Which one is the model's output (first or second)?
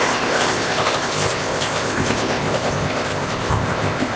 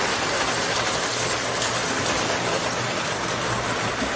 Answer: first